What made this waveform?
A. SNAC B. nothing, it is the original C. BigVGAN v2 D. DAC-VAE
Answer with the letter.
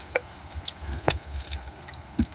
A